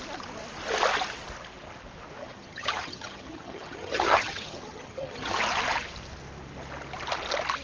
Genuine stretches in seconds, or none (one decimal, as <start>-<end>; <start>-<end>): 0.0-2.2; 5.4-7.6